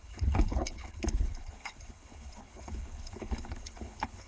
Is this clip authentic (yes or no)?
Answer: no